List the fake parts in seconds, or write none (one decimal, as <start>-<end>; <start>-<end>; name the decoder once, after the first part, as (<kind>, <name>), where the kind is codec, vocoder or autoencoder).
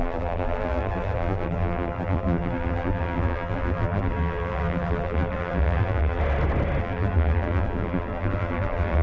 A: 0.0-6.2 (vocoder, BigVGAN v2); 6.8-9.0